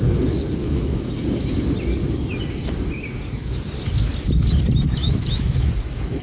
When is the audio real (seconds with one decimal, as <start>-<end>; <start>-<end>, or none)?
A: 0.0-0.6; 1.1-5.0; 5.7-6.2